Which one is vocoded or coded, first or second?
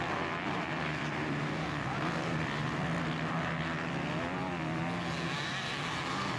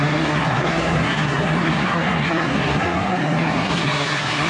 second